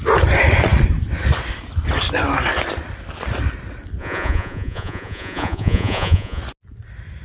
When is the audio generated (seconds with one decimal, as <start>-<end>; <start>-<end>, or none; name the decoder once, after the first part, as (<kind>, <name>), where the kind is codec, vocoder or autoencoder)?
4.0-6.4 (vocoder, Vocos)